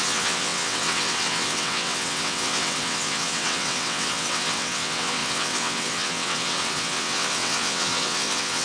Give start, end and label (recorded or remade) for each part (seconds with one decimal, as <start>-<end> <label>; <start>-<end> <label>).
0.0-8.6 remade